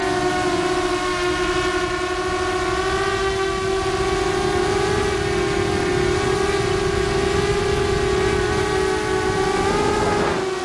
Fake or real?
real